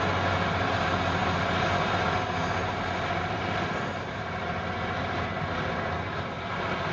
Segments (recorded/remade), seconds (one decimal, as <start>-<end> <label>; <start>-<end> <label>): 0.0-6.9 recorded

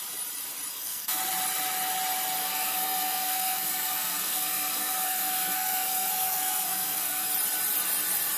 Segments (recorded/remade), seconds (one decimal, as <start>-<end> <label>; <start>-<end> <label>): 0.0-0.7 recorded; 0.7-1.2 remade; 1.2-2.4 recorded; 2.4-7.3 remade; 7.3-8.4 recorded

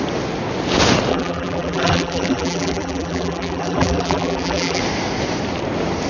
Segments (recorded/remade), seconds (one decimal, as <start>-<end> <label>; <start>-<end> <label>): 0.0-1.1 recorded; 1.1-4.8 remade; 4.8-6.1 recorded

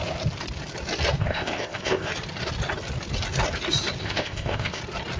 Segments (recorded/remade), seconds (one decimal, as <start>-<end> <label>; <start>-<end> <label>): 0.0-1.2 recorded; 1.2-2.1 remade; 2.1-4.0 recorded; 4.0-4.8 remade; 4.8-5.2 recorded

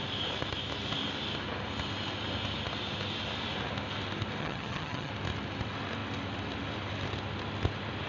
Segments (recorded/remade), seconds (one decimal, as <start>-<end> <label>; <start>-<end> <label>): 0.0-4.4 recorded; 4.4-5.1 remade; 5.1-8.1 recorded

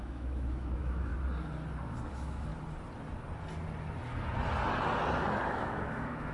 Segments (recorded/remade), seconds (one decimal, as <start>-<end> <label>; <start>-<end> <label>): 0.0-1.1 remade; 1.1-2.1 recorded; 2.1-2.5 remade; 2.5-5.5 recorded; 5.5-6.3 remade